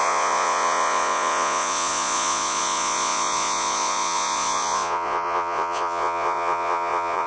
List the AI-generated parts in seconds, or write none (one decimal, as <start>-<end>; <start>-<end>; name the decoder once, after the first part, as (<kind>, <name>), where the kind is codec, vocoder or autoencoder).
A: 0.0-7.3 (vocoder, Vocos)